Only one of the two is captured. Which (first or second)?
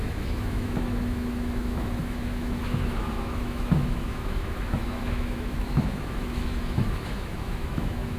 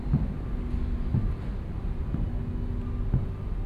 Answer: second